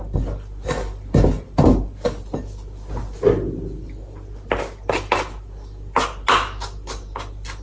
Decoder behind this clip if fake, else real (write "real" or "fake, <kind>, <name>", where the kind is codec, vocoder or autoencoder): real